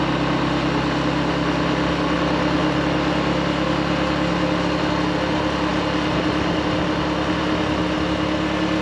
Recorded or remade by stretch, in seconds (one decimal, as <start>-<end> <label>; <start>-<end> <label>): 0.0-8.8 recorded